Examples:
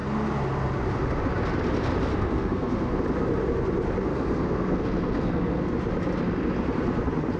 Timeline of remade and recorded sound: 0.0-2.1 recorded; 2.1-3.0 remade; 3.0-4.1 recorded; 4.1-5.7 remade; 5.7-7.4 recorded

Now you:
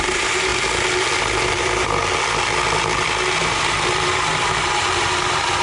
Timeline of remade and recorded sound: 0.0-0.5 remade; 0.5-1.2 recorded; 1.2-2.0 remade; 2.0-3.4 recorded; 3.4-5.6 remade

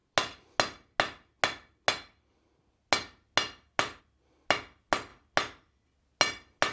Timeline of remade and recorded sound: 0.0-6.7 recorded

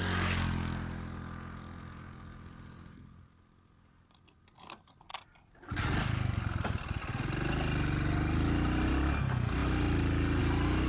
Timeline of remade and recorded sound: 0.0-10.9 recorded

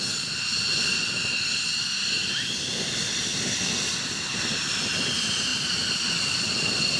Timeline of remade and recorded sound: 0.0-7.0 recorded